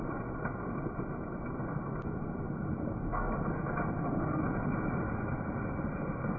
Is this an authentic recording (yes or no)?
yes